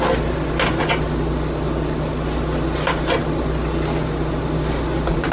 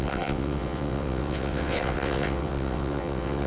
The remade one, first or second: second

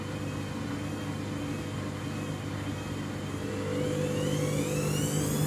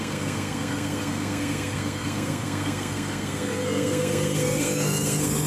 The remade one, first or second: second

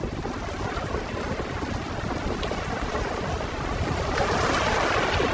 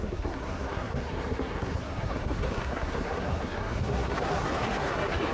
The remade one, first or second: second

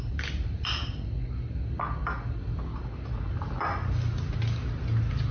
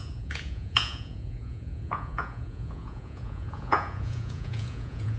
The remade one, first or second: second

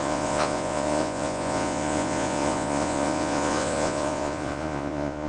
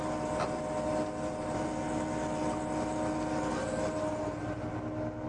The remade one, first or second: first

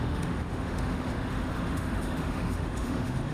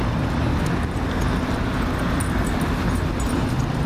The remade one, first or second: first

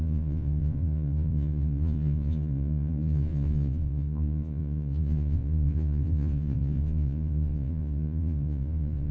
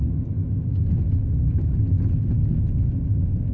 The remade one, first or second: first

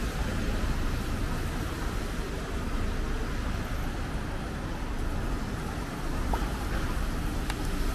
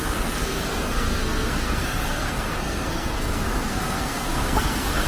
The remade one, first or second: second